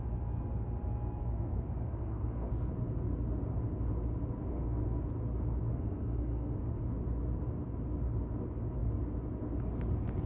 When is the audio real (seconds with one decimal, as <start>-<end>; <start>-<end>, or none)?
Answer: 0.0-1.2; 2.5-4.5; 5.1-5.7; 6.8-10.3

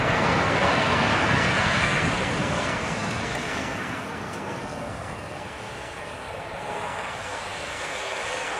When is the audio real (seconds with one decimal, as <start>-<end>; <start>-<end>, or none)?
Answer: none